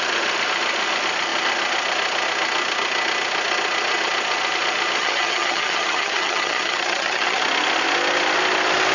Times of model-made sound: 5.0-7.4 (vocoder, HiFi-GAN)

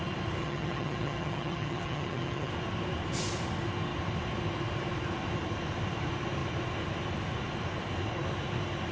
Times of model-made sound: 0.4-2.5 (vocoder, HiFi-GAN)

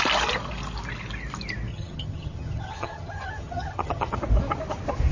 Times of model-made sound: 1.7-4.2 (vocoder, HiFi-GAN)